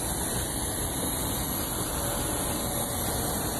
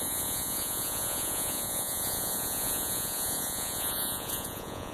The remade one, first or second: second